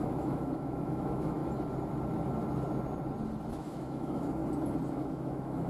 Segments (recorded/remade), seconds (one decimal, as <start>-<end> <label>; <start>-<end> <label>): 0.0-1.4 remade; 1.4-3.5 recorded; 3.5-4.4 remade; 4.4-4.9 recorded; 4.9-5.7 remade